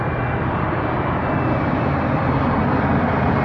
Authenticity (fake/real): real